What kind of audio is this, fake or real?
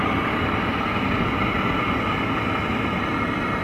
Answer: fake